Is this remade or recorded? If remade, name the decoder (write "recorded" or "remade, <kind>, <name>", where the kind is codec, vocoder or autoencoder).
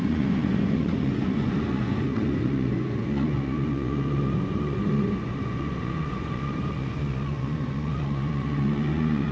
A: remade, vocoder, Vocos